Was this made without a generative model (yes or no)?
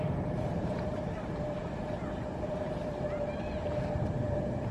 no